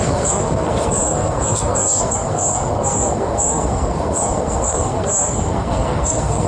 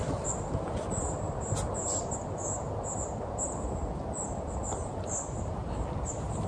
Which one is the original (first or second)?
second